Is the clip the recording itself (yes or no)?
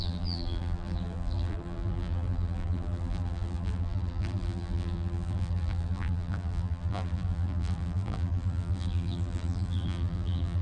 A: no